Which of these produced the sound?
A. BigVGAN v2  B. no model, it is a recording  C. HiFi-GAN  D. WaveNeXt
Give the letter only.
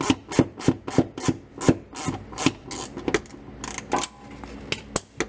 B